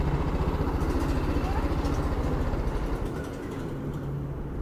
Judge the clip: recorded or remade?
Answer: recorded